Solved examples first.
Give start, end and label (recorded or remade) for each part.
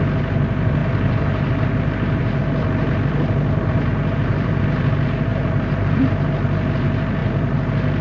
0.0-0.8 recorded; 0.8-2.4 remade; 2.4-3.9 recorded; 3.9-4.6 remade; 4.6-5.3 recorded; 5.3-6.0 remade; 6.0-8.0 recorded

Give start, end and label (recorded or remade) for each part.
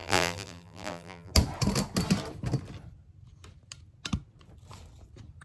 0.0-1.3 remade; 1.3-5.4 recorded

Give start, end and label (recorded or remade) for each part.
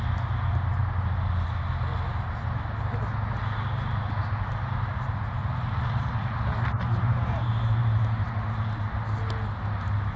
0.0-5.4 recorded; 5.4-8.3 remade; 8.3-10.2 recorded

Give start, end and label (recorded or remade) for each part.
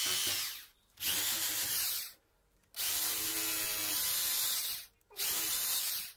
0.0-3.3 remade; 3.3-3.9 recorded; 3.9-6.2 remade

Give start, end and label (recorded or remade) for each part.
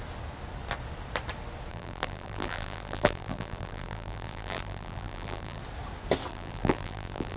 0.0-1.7 recorded; 1.7-5.6 remade; 5.6-6.3 recorded; 6.3-7.4 remade